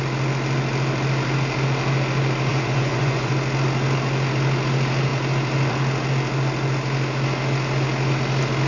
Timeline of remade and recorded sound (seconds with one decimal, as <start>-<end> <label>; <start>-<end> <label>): 0.0-2.5 recorded; 2.5-3.3 remade; 3.3-8.7 recorded